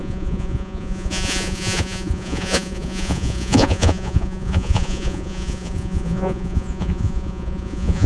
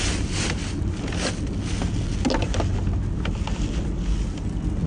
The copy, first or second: first